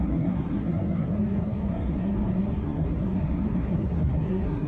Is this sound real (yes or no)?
no